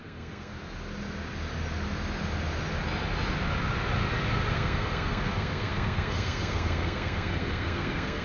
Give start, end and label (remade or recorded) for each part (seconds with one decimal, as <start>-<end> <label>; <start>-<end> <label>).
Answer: 0.0-0.5 remade; 0.5-4.5 recorded; 4.5-8.2 remade